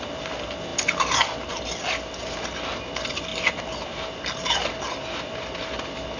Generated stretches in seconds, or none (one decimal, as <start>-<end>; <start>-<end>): none